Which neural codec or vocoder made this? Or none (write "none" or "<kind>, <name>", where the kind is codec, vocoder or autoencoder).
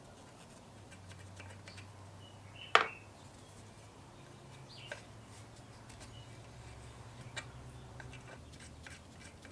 none